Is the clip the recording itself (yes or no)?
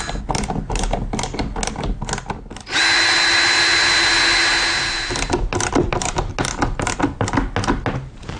yes